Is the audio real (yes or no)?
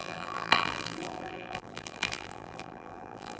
no